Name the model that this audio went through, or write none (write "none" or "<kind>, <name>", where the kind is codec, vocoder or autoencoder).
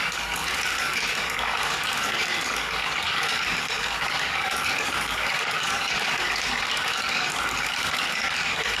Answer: codec, DAC